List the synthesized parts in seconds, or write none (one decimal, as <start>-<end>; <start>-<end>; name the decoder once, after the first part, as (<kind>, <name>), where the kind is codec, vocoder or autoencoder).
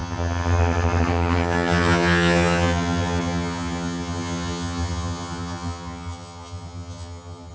0.0-7.5 (vocoder, HiFi-GAN)